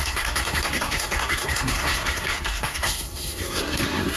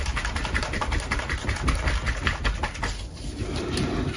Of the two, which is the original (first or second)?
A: second